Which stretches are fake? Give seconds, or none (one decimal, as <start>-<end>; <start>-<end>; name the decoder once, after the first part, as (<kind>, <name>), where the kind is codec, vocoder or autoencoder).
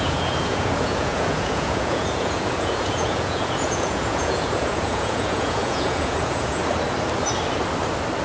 0.0-6.6 (vocoder, Vocos)